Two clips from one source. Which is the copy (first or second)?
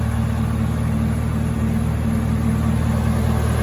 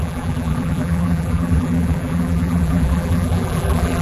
second